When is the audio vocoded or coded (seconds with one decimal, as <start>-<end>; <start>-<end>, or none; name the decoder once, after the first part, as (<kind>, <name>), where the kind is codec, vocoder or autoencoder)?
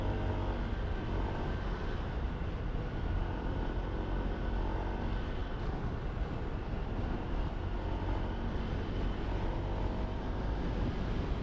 none